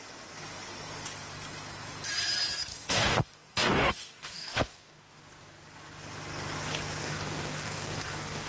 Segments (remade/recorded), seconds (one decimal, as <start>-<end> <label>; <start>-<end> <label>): 0.0-2.7 recorded; 2.7-5.2 remade; 5.2-7.0 recorded; 7.0-8.5 remade